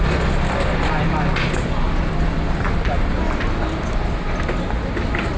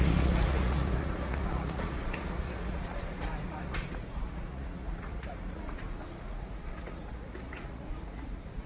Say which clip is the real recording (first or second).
first